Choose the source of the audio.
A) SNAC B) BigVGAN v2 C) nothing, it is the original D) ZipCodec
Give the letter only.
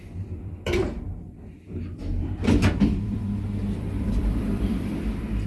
B